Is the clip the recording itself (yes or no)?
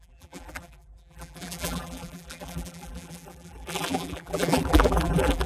no